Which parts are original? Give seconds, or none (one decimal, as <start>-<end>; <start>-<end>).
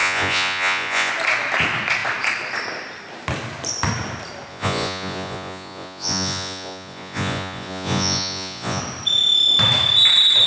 1.1-4.5; 8.8-10.5